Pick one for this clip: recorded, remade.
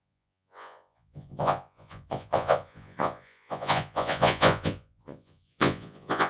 remade